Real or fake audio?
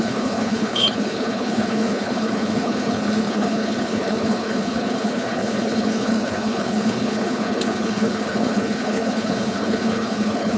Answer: fake